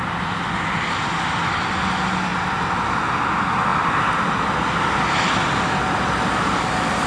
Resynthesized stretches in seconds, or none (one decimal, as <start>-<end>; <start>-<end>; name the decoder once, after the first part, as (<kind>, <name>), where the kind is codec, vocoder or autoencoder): none